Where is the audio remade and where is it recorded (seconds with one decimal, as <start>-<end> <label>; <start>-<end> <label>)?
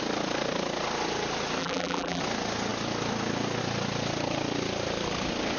0.0-1.6 recorded; 1.6-2.2 remade; 2.2-5.6 recorded